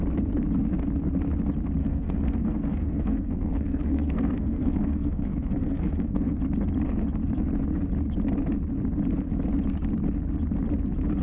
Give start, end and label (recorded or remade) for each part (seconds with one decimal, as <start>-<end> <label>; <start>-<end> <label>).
0.0-1.8 recorded; 1.8-6.4 remade; 6.4-11.2 recorded